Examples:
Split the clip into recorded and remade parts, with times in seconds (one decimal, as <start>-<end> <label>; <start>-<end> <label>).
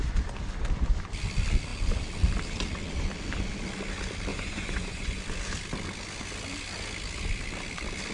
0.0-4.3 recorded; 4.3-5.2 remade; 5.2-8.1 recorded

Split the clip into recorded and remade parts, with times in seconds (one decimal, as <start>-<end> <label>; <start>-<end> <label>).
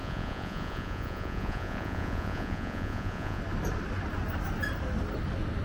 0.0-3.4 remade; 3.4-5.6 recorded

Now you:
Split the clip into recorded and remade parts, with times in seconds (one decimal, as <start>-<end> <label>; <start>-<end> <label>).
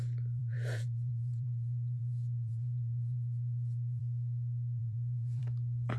0.0-0.4 recorded; 0.4-4.0 remade; 4.0-4.8 recorded; 4.8-5.4 remade; 5.4-6.0 recorded